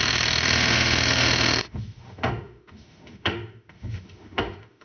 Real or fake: fake